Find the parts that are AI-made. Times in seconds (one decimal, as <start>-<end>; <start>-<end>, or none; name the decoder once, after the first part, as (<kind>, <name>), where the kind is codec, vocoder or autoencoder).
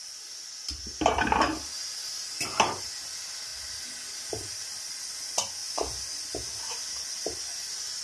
5.6-6.2 (vocoder, Vocos)